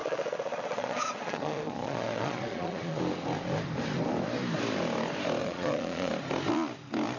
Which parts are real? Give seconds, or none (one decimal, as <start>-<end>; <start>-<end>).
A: 3.0-5.4; 6.1-7.2